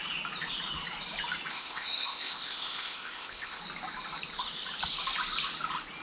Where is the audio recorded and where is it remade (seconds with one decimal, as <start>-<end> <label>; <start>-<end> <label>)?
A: 0.0-1.5 recorded; 1.5-3.6 remade; 3.6-6.0 recorded